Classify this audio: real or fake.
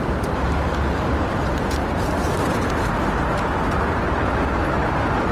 fake